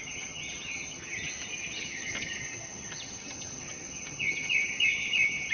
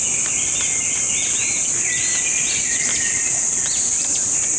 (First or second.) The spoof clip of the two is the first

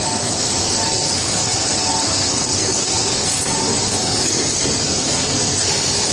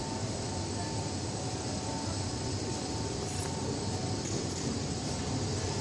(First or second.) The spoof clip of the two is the first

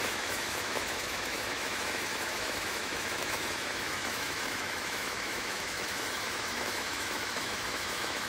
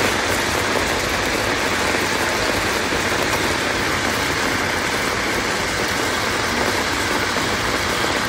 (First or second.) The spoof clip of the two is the first